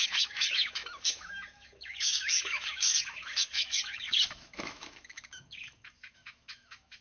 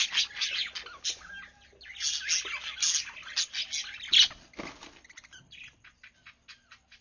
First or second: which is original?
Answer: second